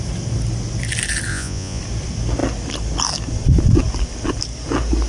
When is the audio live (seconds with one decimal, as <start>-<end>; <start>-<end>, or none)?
0.0-1.3; 1.8-5.1